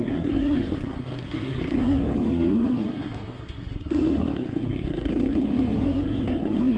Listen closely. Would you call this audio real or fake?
fake